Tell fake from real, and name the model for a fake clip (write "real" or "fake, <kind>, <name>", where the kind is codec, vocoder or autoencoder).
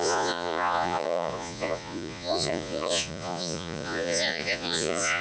fake, vocoder, Vocos